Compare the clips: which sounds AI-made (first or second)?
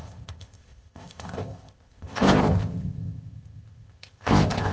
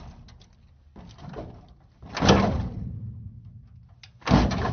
first